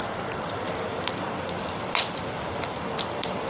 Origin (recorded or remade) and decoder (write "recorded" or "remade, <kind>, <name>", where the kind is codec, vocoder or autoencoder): remade, vocoder, BigVGAN v2